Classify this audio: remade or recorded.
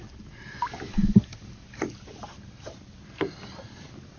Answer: recorded